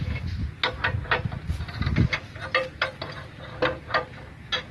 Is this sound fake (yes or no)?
no